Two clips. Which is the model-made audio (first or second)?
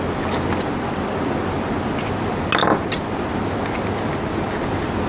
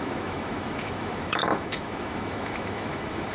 second